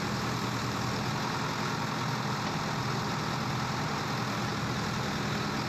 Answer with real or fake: real